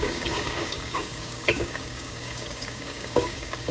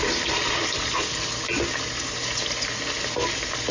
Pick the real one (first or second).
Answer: second